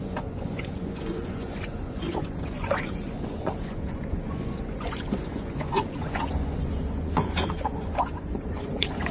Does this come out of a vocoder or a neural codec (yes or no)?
yes